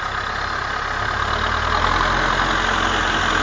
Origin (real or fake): real